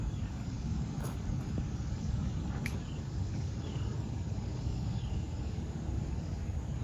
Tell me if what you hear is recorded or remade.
remade